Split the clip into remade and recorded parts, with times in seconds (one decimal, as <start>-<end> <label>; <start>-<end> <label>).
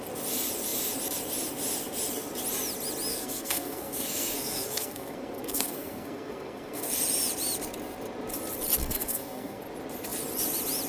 0.0-3.1 recorded; 3.1-6.9 remade; 6.9-8.8 recorded; 8.8-9.6 remade; 9.6-10.9 recorded